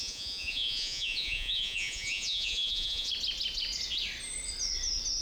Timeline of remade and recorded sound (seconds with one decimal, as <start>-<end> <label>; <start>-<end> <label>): 0.0-3.1 remade; 3.1-5.2 recorded